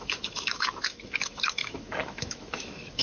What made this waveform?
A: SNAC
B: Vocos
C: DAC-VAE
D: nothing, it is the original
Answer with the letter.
C